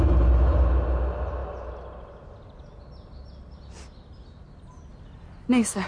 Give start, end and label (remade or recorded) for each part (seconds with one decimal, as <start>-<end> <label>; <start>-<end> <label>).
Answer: 0.0-5.9 recorded